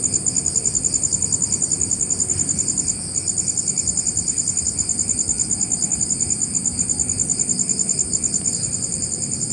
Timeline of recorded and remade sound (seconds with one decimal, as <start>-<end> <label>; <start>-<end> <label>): 0.0-8.5 recorded; 8.5-9.5 remade